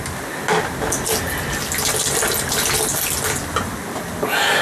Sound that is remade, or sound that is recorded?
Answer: recorded